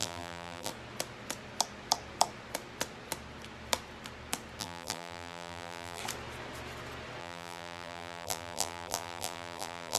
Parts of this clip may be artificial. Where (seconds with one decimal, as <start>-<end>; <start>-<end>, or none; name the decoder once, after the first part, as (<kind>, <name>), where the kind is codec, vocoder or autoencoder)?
0.0-0.7 (vocoder, BigVGAN v2); 4.6-6.0; 7.2-10.0